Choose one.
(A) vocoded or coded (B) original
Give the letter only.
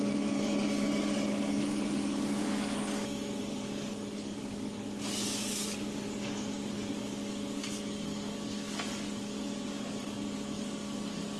A